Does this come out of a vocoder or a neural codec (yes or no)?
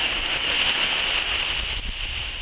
no